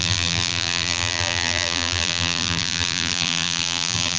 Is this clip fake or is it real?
fake